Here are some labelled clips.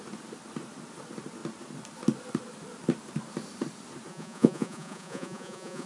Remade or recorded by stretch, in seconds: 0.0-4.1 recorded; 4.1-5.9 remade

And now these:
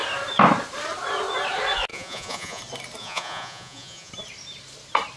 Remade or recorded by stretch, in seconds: 0.0-1.9 recorded; 1.9-2.6 remade; 2.6-3.0 recorded; 3.0-4.1 remade; 4.1-5.2 recorded

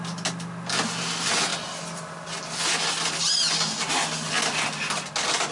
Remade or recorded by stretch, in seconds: 0.0-5.5 recorded

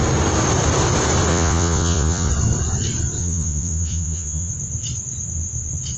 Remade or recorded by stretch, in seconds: 0.0-1.3 recorded; 1.3-2.3 remade; 2.3-3.2 recorded; 3.2-4.5 remade; 4.5-6.0 recorded

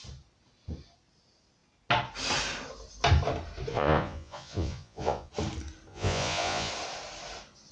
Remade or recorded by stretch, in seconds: 0.0-3.7 recorded; 3.7-5.3 remade; 5.3-5.9 recorded; 5.9-6.7 remade; 6.7-7.7 recorded